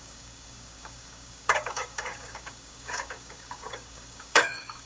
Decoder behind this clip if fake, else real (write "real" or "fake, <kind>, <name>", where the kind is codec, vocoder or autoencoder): fake, codec, DAC